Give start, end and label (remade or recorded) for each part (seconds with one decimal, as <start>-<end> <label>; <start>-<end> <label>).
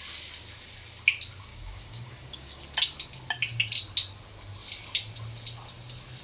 0.0-1.5 recorded; 1.5-2.6 remade; 2.6-6.2 recorded